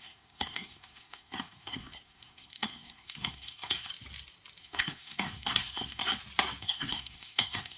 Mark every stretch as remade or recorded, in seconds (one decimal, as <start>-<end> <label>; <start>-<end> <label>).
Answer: 0.0-3.9 remade; 3.9-4.6 recorded; 4.6-6.0 remade; 6.0-6.6 recorded; 6.6-7.8 remade